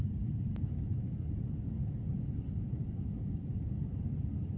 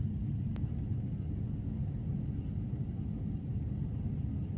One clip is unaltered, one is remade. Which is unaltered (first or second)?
second